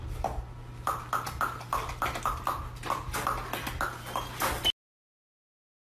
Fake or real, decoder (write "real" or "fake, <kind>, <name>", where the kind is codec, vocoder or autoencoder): real